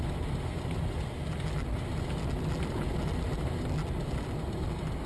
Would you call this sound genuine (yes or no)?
yes